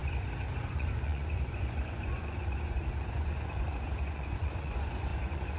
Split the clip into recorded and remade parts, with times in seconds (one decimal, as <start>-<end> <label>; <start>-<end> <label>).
0.0-0.6 recorded; 0.6-5.6 remade